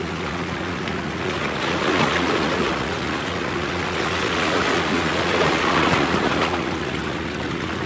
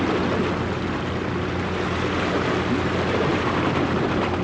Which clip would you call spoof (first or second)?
first